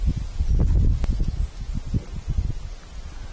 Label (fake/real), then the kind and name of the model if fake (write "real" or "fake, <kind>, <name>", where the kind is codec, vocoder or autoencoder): real